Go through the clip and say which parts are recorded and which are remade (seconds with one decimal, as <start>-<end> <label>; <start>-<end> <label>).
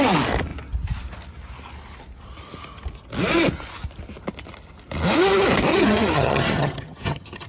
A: 0.0-5.7 recorded; 5.7-7.5 remade